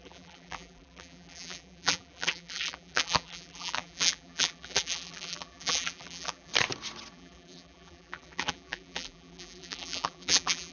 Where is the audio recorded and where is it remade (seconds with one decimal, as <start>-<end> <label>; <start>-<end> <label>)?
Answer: 0.0-6.5 remade; 6.5-7.1 recorded; 7.1-10.7 remade